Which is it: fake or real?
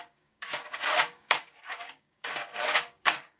fake